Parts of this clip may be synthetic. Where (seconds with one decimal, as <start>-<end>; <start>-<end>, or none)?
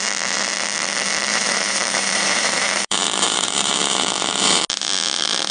1.3-4.6